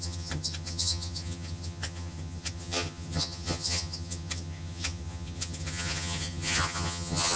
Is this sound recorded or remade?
remade